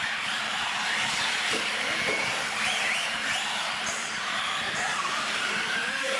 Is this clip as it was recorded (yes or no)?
no